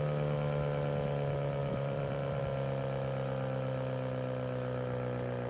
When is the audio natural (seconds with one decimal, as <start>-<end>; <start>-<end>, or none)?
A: 0.0-1.6; 2.4-5.5